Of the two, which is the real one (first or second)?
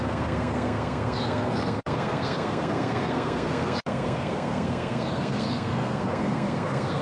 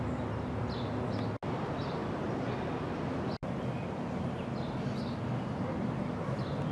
second